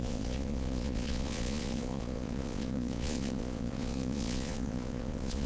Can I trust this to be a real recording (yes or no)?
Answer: no